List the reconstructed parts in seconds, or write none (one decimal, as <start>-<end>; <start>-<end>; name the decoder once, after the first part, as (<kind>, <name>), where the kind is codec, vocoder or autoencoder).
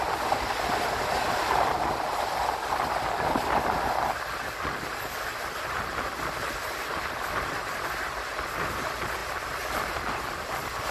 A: none